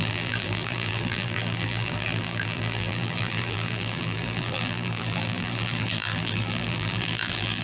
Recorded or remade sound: remade